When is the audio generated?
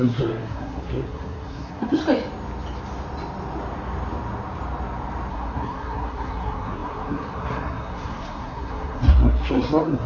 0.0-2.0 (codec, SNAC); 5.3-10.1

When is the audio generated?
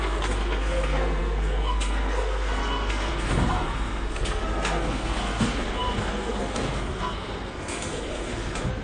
0.0-8.8 (codec, SNAC)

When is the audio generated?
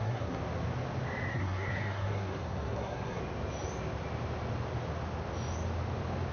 0.0-0.4 (codec, SNAC); 1.3-3.2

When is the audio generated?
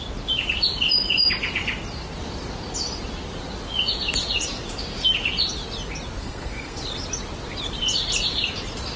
6.2-6.8 (codec, SNAC)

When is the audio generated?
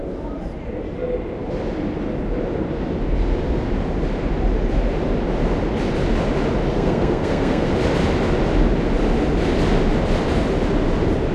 6.7-7.7 (codec, SNAC)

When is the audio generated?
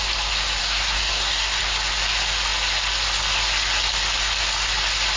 0.6-1.6 (codec, SNAC)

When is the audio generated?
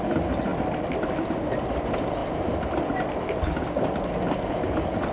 none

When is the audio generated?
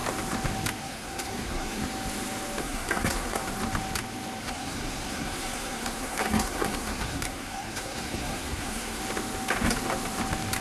0.8-1.8 (codec, SNAC); 2.6-3.4; 4.4-9.0